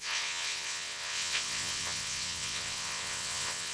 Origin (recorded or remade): remade